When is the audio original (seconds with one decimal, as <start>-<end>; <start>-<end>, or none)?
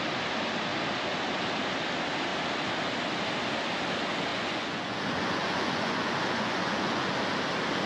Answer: 0.0-4.3; 7.1-7.9